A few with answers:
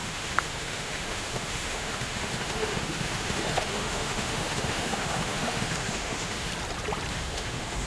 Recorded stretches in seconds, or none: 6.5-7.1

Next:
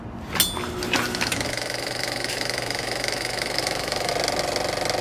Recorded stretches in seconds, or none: 0.0-1.1; 4.1-5.0

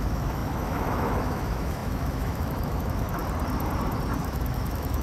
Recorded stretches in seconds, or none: 3.2-4.2

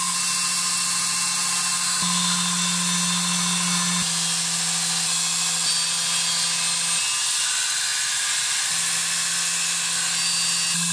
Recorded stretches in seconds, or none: 0.0-10.9

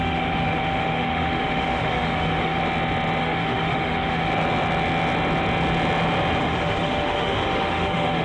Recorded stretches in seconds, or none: 2.6-3.2; 4.3-6.4

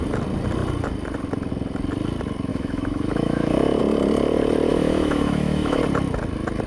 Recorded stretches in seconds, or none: 0.0-2.5; 3.8-4.7; 5.8-6.7

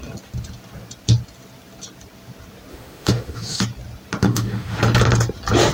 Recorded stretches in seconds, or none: 0.0-2.7; 3.6-4.2; 4.8-5.7

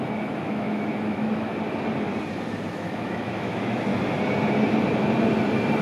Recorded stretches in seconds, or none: 1.5-2.7; 3.9-5.8